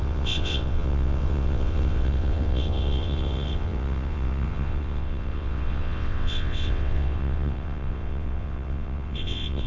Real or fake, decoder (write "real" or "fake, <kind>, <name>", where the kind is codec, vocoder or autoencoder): fake, vocoder, WaveNeXt